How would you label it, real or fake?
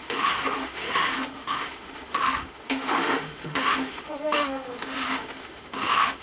fake